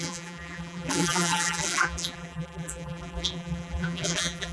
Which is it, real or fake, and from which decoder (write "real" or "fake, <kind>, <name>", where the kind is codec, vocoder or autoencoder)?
fake, vocoder, BigVGAN v2